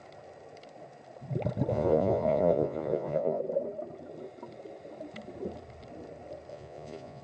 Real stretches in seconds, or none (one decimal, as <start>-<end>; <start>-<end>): 0.0-1.7; 3.4-6.5

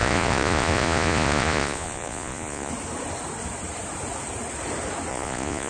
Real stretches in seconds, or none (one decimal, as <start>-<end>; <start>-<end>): 2.7-5.1